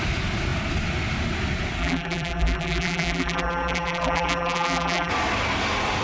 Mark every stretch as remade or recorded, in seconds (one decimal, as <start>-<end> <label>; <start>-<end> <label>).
0.0-1.8 recorded; 1.8-5.1 remade; 5.1-6.0 recorded